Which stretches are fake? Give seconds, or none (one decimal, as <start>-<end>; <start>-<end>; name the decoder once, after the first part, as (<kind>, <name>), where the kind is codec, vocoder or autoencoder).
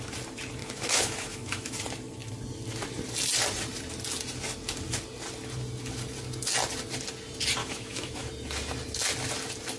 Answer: 0.6-1.8 (autoencoder, DAC-VAE); 7.6-8.3